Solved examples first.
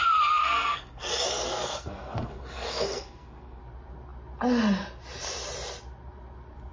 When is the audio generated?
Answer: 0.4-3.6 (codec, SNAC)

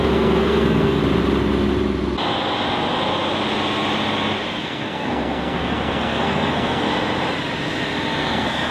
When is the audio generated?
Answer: 0.0-1.0 (codec, SNAC); 4.6-6.9; 8.2-8.7

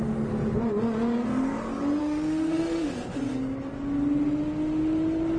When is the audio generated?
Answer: 2.0-2.9 (autoencoder, DAC-VAE)

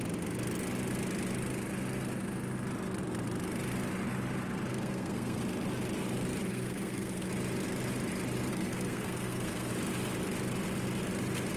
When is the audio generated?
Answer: 4.7-5.4 (codec, SNAC); 6.5-7.3; 8.5-9.7

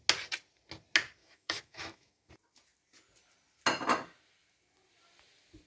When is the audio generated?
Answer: 1.2-2.3 (autoencoder, DAC-VAE)

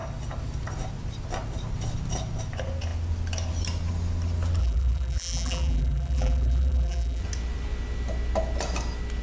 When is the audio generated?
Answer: 4.6-7.2 (vocoder, BigVGAN v2)